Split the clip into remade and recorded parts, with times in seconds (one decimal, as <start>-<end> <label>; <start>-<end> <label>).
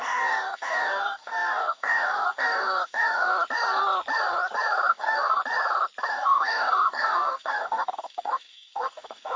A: 0.0-3.3 remade; 3.3-4.9 recorded; 4.9-5.4 remade; 5.4-6.1 recorded; 6.1-9.4 remade